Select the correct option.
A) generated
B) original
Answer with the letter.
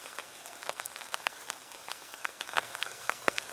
A